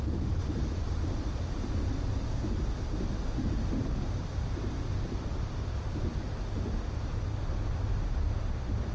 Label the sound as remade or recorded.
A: recorded